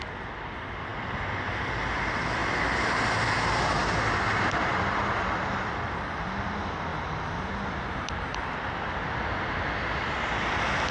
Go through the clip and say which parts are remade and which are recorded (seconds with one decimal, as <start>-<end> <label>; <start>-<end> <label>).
0.0-0.9 remade; 0.9-1.5 recorded; 1.5-2.4 remade; 2.4-3.2 recorded; 3.2-3.8 remade; 3.8-4.6 recorded; 4.6-6.9 remade; 6.9-10.3 recorded; 10.3-10.9 remade